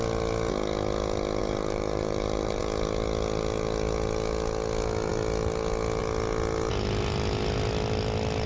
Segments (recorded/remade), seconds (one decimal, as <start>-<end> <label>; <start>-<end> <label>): 0.0-1.4 recorded; 1.4-2.6 remade; 2.6-8.5 recorded